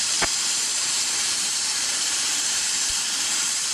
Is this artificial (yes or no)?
yes